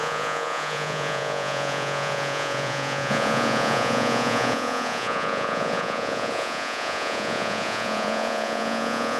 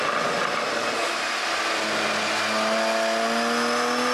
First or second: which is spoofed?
first